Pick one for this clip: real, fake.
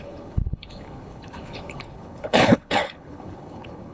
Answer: fake